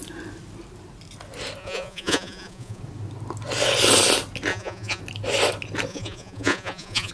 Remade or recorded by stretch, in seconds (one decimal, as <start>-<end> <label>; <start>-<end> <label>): 0.0-1.6 recorded; 1.6-2.8 remade; 2.8-4.5 recorded; 4.5-5.0 remade; 5.0-5.9 recorded; 5.9-7.1 remade